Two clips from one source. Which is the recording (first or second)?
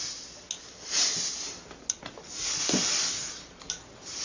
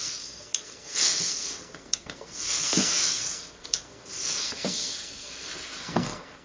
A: first